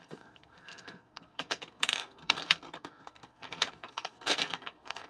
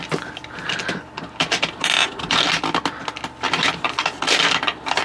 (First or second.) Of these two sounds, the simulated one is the first